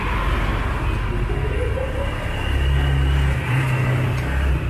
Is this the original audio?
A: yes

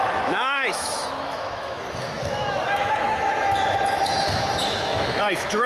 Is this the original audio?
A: no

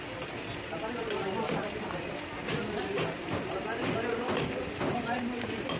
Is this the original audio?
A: yes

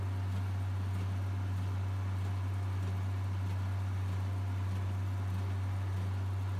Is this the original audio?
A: yes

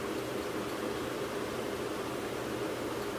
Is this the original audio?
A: yes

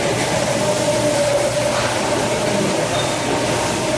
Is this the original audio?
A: yes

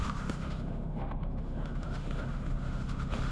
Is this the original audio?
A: no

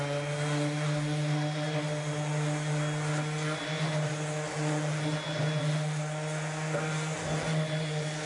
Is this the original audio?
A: yes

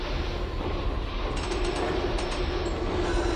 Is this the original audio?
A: yes